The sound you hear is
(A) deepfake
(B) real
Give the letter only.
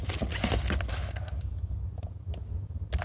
B